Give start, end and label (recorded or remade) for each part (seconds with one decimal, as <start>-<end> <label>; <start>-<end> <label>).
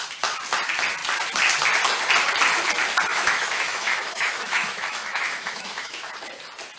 0.0-3.1 recorded; 3.1-6.1 remade; 6.1-6.8 recorded